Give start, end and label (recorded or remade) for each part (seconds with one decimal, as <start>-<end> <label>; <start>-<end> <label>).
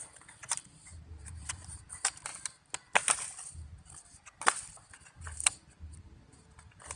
0.0-7.0 recorded